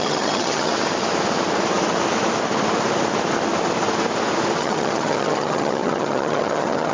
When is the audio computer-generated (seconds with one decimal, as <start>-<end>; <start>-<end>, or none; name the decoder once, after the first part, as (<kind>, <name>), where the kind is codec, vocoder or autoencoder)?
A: 0.0-0.7 (vocoder, HiFi-GAN); 4.6-6.9